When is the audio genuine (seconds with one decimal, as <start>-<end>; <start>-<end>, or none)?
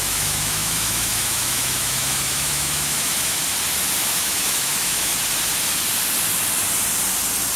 3.4-4.0; 5.1-7.6